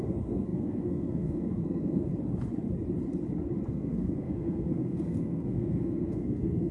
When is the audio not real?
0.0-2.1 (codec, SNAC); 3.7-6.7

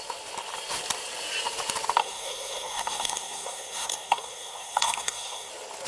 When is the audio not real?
2.0-5.5 (codec, SNAC)